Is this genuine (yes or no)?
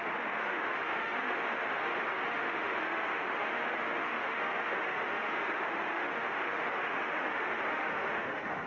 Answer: no